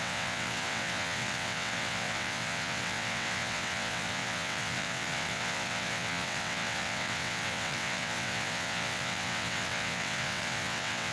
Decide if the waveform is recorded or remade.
remade